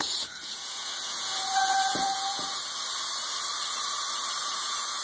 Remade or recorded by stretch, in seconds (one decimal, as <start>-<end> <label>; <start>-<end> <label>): 0.0-2.6 remade; 2.6-4.4 recorded; 4.4-5.0 remade